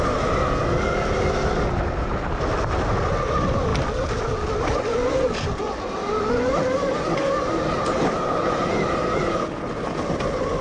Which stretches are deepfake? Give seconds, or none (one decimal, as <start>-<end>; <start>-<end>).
none